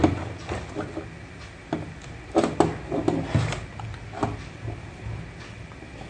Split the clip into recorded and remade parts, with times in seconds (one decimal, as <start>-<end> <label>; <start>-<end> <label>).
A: 0.0-6.1 recorded